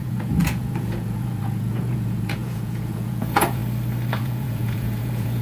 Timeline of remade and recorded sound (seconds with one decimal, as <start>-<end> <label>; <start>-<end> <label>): 0.0-3.6 remade; 3.6-4.1 recorded; 4.1-5.4 remade